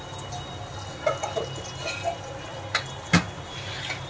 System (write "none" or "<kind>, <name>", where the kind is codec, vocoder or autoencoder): none